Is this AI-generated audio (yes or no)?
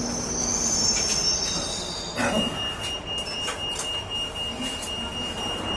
no